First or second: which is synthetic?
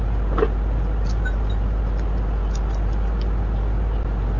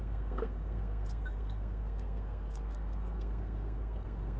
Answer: second